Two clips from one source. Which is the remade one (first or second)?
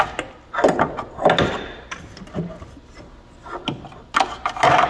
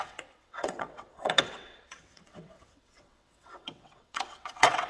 second